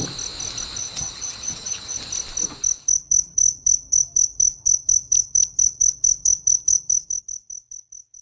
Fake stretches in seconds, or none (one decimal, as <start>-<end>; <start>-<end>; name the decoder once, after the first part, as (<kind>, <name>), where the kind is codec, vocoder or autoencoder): 0.8-2.0 (vocoder, HiFi-GAN)